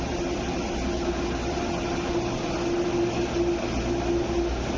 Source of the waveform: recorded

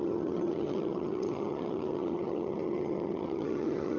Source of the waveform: remade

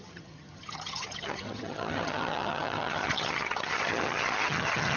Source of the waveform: remade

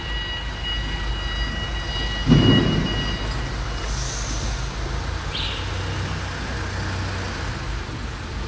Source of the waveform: recorded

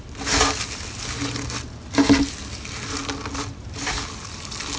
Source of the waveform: recorded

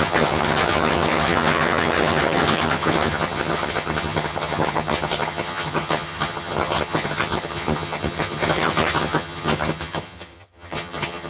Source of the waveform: remade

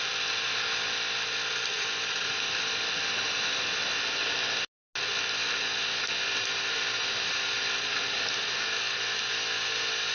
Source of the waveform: recorded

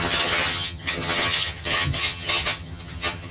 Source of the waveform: remade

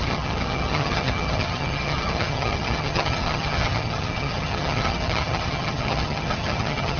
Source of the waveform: remade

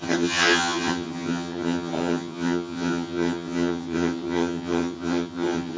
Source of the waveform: remade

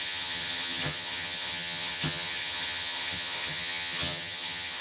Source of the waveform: remade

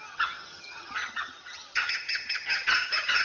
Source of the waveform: remade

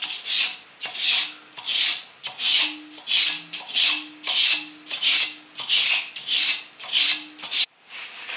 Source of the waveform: recorded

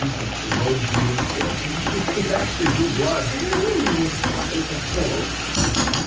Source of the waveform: recorded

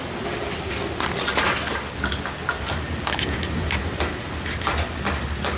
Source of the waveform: recorded